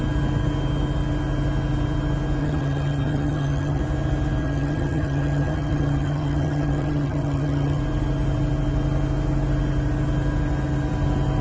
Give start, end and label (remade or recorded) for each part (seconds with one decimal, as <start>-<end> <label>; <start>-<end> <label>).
0.0-2.4 recorded; 2.4-3.8 remade; 3.8-4.4 recorded; 4.4-7.8 remade; 7.8-11.4 recorded